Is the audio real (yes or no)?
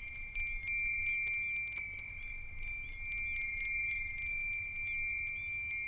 yes